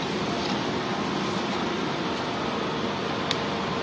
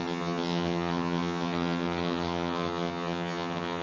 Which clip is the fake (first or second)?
second